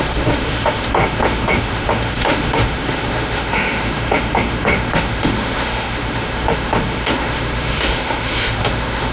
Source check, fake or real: fake